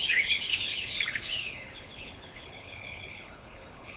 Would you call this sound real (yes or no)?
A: no